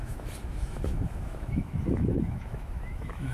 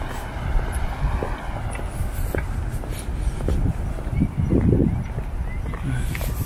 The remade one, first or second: first